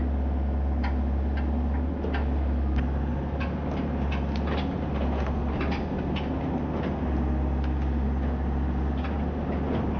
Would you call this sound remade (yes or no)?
no